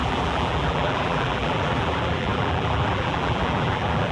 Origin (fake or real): fake